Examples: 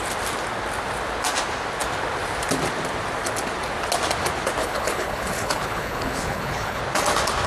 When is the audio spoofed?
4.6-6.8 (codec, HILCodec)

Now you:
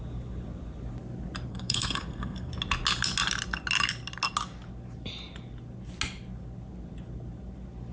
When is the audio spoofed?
1.5-2.5 (codec, SNAC)

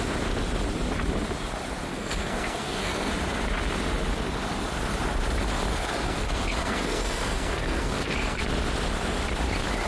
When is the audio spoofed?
1.9-3.1 (codec, SNAC); 5.7-8.4

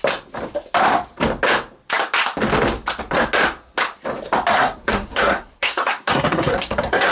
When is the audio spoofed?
4.5-7.1 (codec, SNAC)

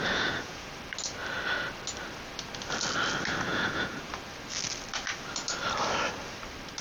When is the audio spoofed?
0.0-0.7 (vocoder, Vocos); 3.5-4.1

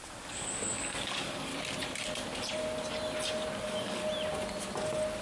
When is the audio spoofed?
0.0-1.5 (codec, DAC); 3.6-4.0